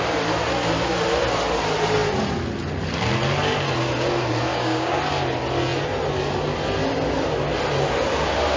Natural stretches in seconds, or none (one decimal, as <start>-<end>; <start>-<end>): 0.0-4.5; 5.0-8.6